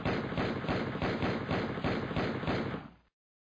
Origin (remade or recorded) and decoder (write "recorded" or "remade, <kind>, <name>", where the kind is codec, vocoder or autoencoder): recorded